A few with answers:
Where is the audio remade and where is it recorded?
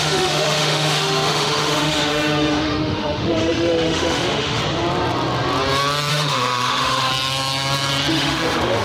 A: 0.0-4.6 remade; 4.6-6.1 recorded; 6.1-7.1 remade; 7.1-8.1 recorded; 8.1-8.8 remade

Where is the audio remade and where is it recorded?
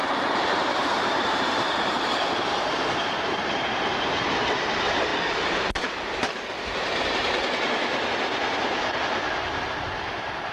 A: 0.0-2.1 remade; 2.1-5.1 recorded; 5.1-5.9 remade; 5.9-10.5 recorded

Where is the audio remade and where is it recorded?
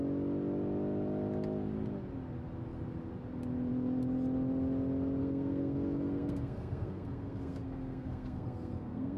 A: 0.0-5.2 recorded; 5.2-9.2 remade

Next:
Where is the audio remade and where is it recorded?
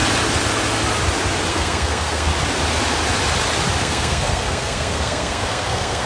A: 0.0-1.5 recorded; 1.5-2.3 remade; 2.3-3.8 recorded; 3.8-6.1 remade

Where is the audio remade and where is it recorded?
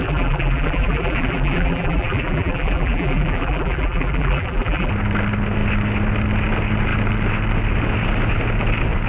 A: 0.0-4.9 remade; 4.9-9.1 recorded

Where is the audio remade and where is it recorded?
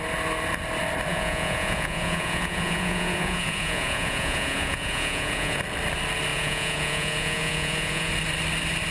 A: 0.0-1.1 recorded; 1.1-5.6 remade; 5.6-6.3 recorded; 6.3-8.1 remade; 8.1-8.9 recorded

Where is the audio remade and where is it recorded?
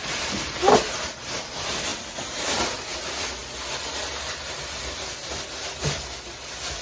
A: 0.0-1.9 recorded; 1.9-2.6 remade; 2.6-6.8 recorded